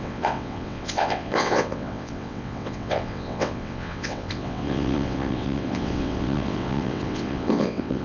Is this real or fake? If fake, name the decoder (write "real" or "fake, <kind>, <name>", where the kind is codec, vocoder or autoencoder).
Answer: fake, vocoder, WaveNeXt